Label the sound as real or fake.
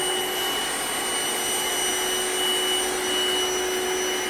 real